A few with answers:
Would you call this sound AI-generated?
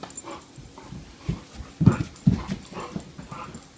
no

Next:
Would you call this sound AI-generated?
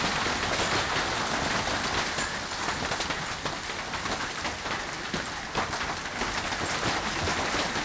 no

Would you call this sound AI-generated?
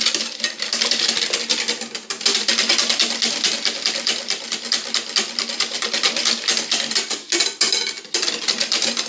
no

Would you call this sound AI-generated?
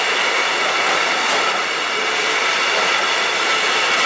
no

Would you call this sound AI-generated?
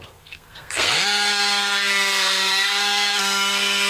yes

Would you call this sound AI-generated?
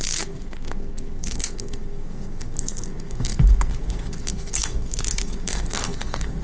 yes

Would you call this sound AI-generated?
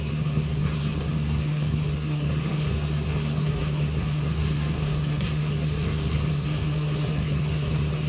yes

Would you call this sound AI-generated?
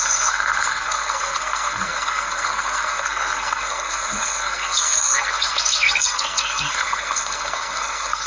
yes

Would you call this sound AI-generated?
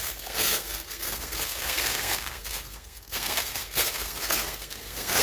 yes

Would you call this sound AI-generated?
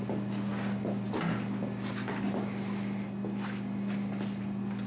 no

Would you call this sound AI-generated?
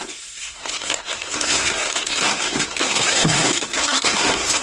yes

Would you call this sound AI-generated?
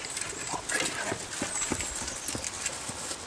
no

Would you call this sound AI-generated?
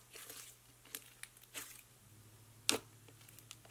no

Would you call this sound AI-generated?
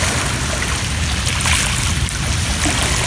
no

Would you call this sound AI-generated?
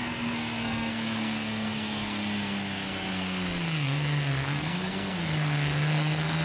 yes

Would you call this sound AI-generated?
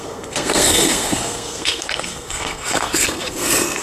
yes